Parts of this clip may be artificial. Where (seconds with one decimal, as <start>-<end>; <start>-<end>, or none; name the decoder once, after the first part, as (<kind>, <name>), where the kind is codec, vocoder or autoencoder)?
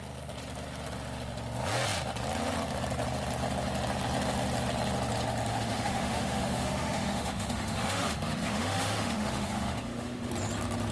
5.5-10.3 (autoencoder, DAC-VAE)